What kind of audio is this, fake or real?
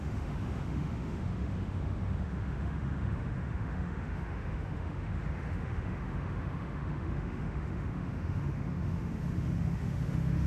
fake